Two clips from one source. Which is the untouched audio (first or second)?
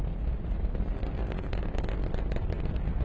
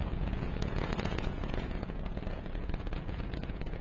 first